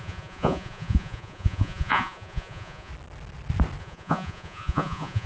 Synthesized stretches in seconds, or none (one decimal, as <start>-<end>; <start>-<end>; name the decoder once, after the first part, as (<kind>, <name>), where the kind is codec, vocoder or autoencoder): 0.0-2.9 (vocoder, Vocos); 3.8-5.3